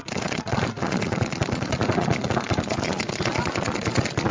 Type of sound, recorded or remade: remade